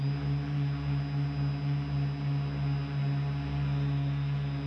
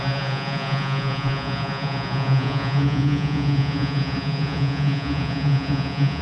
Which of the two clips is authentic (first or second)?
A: first